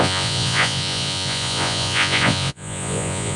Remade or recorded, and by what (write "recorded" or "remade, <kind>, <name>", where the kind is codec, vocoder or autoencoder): remade, vocoder, Vocos